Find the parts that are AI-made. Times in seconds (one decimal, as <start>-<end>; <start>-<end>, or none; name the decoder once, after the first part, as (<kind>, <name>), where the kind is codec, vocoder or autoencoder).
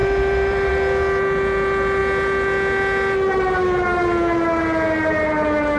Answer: 0.0-0.7 (vocoder, BigVGAN v2)